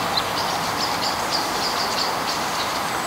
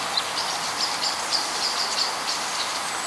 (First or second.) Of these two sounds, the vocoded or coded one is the first